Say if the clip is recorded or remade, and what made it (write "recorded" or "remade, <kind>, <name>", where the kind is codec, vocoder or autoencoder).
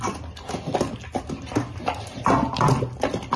recorded